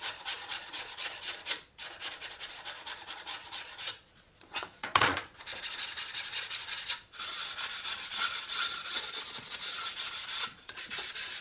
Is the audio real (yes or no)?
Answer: no